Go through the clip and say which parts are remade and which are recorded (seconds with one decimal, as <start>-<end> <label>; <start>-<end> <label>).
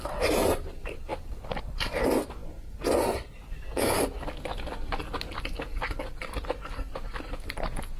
0.0-1.1 recorded; 1.1-2.0 remade; 2.0-8.0 recorded